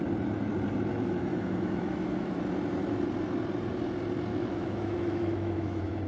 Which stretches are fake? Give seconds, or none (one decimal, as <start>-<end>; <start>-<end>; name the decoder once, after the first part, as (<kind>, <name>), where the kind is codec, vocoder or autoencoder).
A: 0.9-2.4 (autoencoder, DAC-VAE); 4.3-6.1